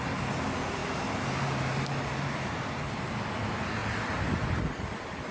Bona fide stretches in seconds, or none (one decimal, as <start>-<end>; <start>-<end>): 0.0-0.8; 3.1-5.3